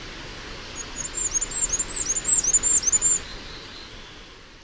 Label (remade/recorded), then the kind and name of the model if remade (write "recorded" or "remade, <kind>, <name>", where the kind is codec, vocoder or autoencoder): recorded